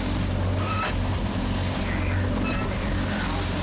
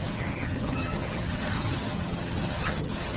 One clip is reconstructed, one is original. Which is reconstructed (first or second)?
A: second